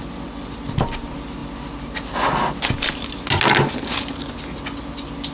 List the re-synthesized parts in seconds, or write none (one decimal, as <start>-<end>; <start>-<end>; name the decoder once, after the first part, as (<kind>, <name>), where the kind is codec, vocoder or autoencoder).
none